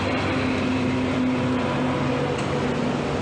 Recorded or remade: recorded